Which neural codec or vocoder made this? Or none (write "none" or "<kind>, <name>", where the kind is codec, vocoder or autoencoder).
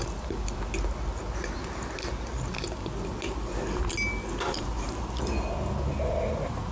none